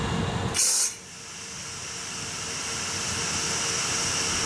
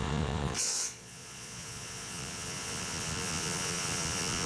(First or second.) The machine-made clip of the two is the second